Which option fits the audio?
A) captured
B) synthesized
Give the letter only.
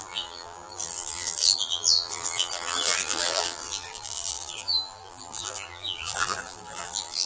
B